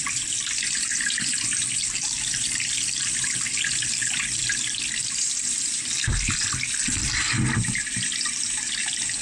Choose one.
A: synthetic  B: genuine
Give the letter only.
B